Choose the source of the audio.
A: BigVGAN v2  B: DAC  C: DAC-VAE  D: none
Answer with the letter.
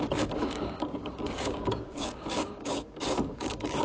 B